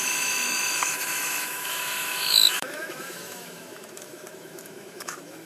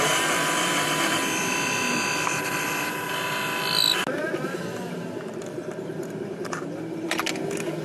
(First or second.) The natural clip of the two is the second